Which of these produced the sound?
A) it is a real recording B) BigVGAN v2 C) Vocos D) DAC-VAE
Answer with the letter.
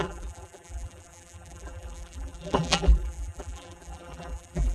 B